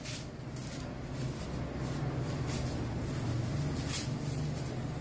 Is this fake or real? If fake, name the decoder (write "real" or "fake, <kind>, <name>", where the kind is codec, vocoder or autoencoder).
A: real